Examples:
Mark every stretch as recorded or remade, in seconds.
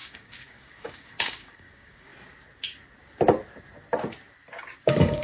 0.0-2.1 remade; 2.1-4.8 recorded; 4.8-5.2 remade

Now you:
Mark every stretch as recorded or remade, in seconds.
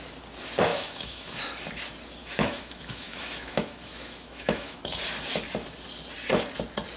0.0-0.7 recorded; 0.7-1.4 remade; 1.4-2.2 recorded; 2.2-4.8 remade; 4.8-7.0 recorded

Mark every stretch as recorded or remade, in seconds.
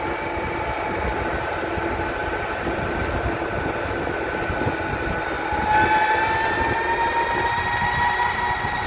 0.0-8.9 recorded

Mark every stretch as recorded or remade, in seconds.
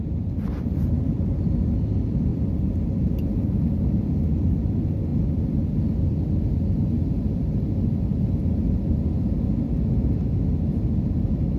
0.0-11.6 recorded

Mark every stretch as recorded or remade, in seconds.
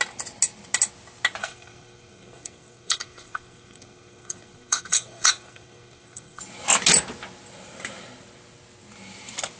0.0-1.4 recorded; 1.4-6.4 remade; 6.4-9.6 recorded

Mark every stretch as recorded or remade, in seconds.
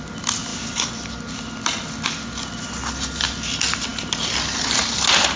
0.0-5.4 recorded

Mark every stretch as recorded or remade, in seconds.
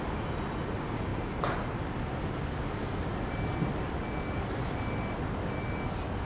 0.0-6.3 recorded